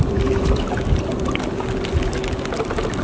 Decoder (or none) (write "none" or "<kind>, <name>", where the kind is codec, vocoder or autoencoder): none